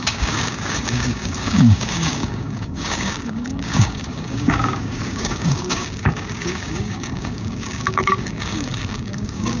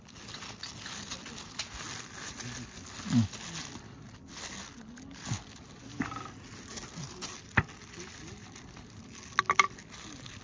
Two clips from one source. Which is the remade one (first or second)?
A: first